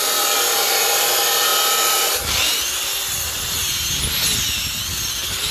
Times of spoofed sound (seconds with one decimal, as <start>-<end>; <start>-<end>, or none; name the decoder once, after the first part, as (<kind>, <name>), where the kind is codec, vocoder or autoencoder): none